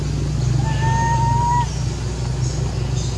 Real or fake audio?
real